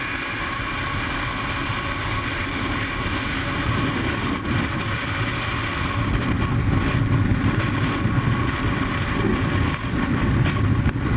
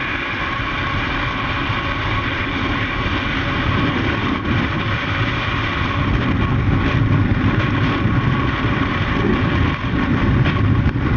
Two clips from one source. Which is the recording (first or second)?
first